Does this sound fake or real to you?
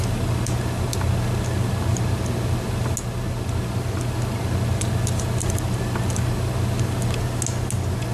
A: real